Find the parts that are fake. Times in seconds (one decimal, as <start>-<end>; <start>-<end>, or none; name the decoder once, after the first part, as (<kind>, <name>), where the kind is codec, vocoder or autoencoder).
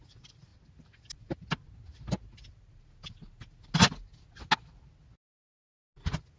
none